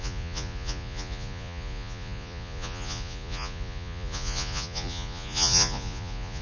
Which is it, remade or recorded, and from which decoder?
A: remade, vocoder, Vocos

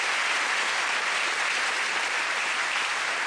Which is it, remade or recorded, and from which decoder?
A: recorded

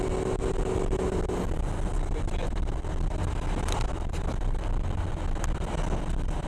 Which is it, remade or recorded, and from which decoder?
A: recorded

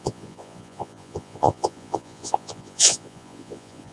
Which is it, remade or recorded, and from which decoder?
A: remade, vocoder, Vocos